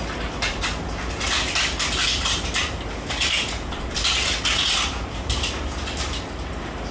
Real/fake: real